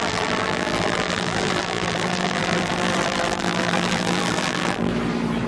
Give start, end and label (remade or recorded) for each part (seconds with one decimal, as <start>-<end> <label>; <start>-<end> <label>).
0.0-4.9 remade; 4.9-5.5 recorded